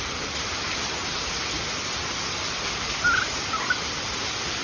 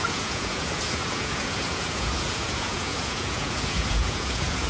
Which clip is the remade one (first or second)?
second